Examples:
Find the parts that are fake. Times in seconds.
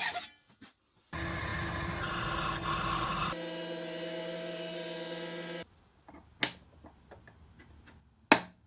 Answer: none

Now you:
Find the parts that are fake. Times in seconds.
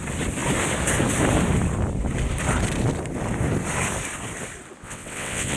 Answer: 4.8-5.6 (vocoder, WaveNeXt)